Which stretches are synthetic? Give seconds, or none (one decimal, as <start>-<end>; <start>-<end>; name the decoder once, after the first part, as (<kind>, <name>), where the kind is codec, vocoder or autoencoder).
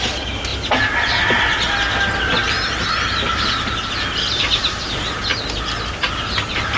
none